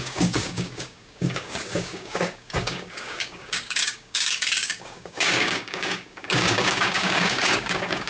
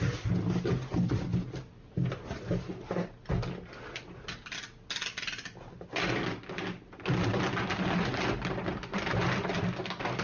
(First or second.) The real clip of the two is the second